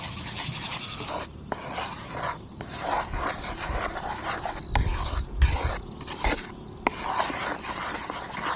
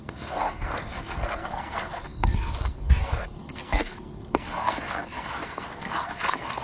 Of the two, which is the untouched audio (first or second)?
first